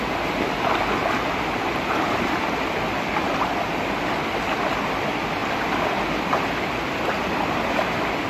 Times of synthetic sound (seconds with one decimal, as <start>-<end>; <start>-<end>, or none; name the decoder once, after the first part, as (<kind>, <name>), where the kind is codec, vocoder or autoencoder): none